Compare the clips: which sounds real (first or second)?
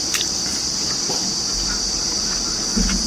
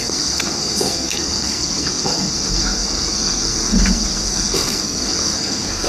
first